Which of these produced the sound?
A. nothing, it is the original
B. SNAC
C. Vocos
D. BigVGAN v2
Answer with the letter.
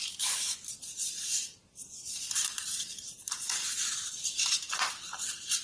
D